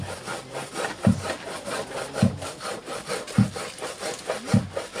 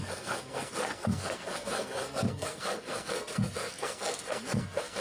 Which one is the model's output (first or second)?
second